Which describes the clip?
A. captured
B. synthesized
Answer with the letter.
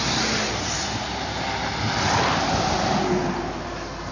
A